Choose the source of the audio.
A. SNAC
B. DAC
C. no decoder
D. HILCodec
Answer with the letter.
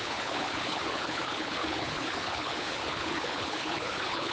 D